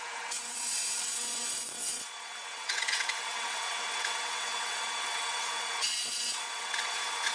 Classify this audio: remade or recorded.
remade